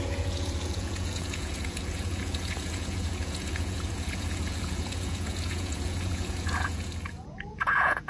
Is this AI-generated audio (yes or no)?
yes